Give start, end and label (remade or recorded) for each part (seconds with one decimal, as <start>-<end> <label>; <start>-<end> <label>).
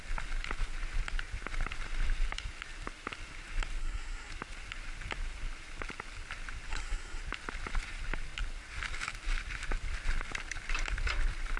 0.0-3.8 recorded; 3.8-4.3 remade; 4.3-6.7 recorded; 6.7-7.2 remade; 7.2-11.6 recorded